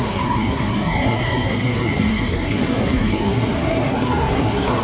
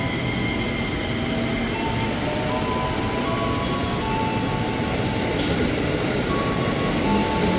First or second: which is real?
second